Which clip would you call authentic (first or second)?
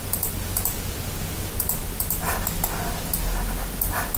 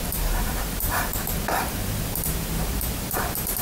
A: first